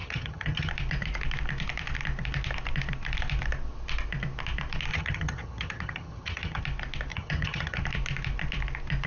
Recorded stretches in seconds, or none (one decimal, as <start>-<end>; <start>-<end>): 0.7-4.9; 6.6-7.1; 7.8-9.1